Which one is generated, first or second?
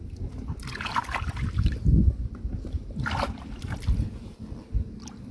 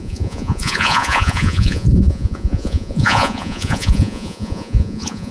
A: second